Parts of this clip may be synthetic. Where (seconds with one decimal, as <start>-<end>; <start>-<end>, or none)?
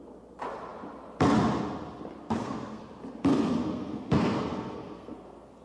2.2-2.8; 3.3-5.6